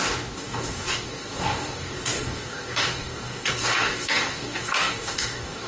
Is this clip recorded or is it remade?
remade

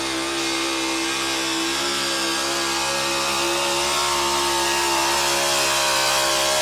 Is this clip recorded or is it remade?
recorded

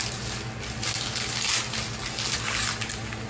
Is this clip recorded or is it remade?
recorded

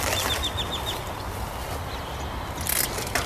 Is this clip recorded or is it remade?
recorded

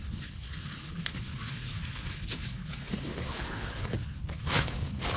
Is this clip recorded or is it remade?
remade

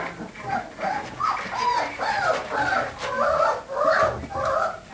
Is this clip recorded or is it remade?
recorded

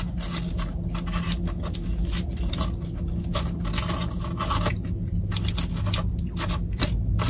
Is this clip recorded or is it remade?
recorded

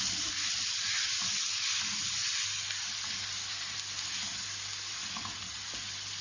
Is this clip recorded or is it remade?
recorded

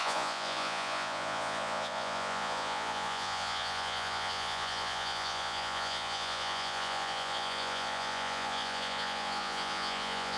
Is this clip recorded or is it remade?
remade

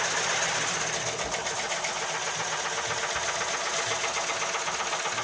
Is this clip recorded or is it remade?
recorded